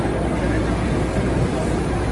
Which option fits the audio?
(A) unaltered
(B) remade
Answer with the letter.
A